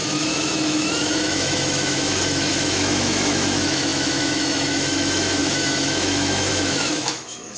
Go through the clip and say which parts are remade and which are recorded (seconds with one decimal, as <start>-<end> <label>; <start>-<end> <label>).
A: 0.0-7.6 remade